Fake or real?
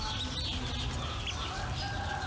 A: real